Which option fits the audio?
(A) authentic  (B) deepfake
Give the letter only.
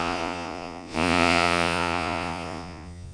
B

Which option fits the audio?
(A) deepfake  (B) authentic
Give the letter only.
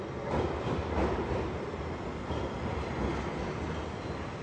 B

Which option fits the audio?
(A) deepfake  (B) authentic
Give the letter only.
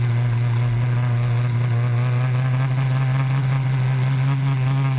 B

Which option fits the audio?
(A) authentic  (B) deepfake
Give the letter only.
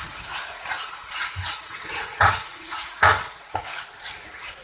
B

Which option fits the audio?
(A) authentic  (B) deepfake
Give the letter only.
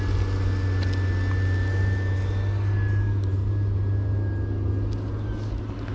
A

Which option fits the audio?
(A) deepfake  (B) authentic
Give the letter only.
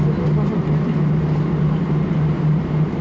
B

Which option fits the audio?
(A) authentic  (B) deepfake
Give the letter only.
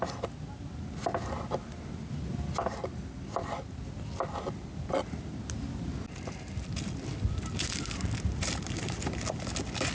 A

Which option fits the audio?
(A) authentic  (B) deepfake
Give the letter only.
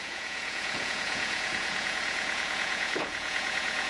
B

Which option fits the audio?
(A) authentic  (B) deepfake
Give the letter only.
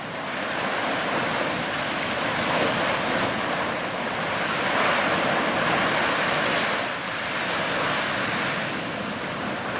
A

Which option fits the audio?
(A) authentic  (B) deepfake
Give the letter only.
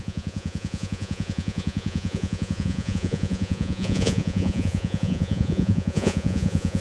B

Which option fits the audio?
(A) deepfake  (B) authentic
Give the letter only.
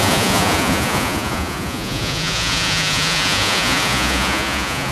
A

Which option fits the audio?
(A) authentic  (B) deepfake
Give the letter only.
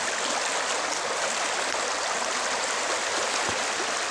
A